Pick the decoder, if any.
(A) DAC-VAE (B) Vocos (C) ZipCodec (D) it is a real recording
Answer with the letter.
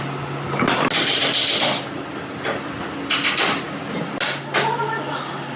D